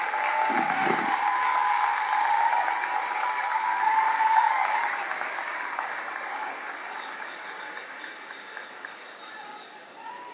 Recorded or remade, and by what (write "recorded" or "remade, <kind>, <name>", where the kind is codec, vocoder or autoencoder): remade, codec, DAC